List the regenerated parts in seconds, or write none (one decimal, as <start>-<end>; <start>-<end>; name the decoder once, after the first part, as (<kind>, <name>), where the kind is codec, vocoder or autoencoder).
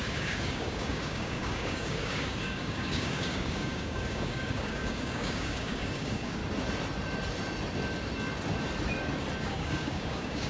0.0-6.4 (codec, DAC); 9.4-10.5